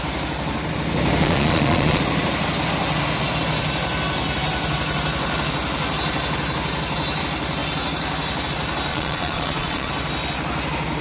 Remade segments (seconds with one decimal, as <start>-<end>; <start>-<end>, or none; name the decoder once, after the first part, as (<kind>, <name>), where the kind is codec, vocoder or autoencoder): 1.2-2.0 (vocoder, Vocos); 8.9-9.9